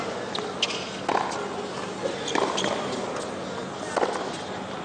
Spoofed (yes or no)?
no